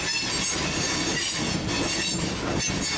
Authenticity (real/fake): real